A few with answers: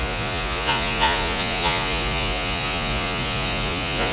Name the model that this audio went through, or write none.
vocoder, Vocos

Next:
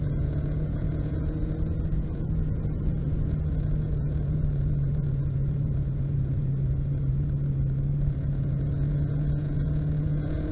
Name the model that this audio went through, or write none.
vocoder, Vocos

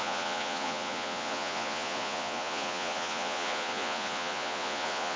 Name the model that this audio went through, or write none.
vocoder, Vocos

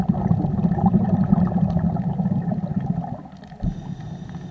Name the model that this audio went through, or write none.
none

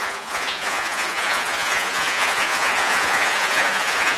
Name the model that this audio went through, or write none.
vocoder, Vocos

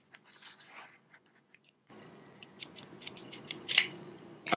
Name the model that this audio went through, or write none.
vocoder, Vocos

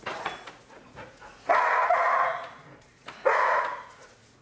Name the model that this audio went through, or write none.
vocoder, Vocos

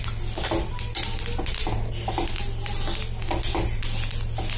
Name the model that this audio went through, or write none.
none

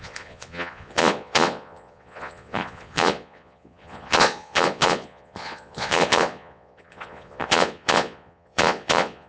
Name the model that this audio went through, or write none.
vocoder, Vocos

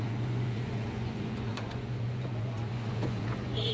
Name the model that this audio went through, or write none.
vocoder, Vocos